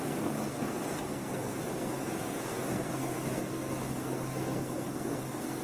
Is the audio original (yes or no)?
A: no